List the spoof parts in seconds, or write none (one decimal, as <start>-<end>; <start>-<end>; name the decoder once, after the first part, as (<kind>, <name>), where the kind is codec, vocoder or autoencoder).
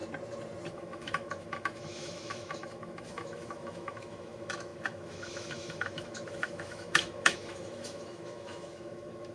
0.7-9.3 (autoencoder, DAC-VAE)